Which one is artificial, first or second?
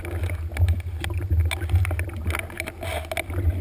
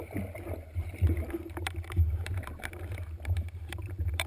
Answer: second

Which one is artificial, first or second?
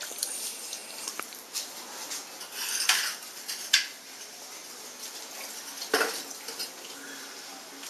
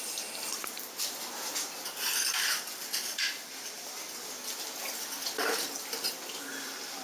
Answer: second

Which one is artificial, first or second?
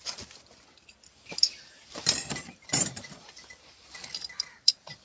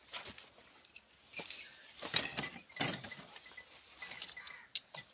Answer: first